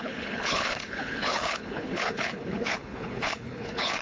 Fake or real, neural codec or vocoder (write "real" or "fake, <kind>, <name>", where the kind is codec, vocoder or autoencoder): fake, codec, HILCodec